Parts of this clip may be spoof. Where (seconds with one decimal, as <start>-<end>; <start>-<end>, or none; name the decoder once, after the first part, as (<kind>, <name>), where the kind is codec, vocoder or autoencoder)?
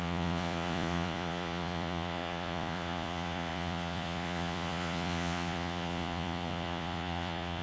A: 0.0-7.6 (vocoder, Vocos)